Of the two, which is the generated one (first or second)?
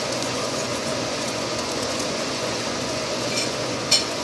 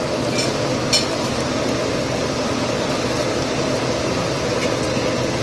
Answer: first